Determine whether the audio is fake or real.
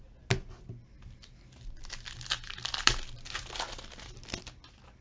real